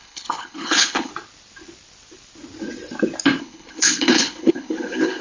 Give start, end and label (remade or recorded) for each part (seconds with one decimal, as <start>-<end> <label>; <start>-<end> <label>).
0.0-1.1 remade; 1.1-3.4 recorded; 3.4-5.2 remade